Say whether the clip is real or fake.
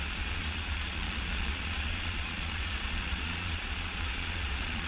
fake